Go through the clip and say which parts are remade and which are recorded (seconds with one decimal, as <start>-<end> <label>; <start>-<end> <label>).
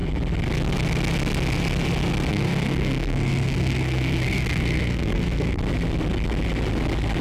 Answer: 0.0-2.3 recorded; 2.3-5.6 remade; 5.6-7.2 recorded